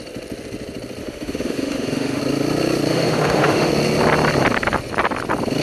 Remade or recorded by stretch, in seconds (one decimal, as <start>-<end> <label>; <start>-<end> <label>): 0.0-1.0 recorded; 1.0-2.2 remade; 2.2-2.9 recorded; 2.9-3.7 remade; 3.7-5.6 recorded